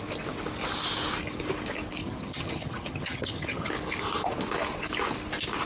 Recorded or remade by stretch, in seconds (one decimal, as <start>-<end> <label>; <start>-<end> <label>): 0.0-2.0 recorded; 2.0-3.7 remade; 3.7-5.7 recorded